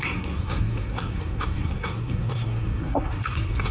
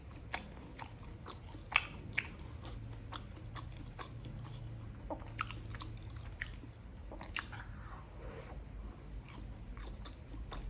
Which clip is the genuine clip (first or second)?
second